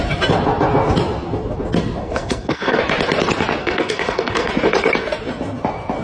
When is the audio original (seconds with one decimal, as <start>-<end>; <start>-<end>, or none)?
0.0-2.0; 2.8-3.6; 4.5-6.0